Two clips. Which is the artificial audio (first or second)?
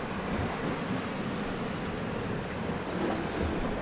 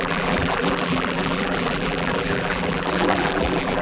second